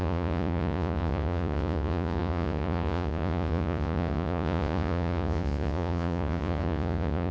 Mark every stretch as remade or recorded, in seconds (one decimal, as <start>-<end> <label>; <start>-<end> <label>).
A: 0.0-7.3 remade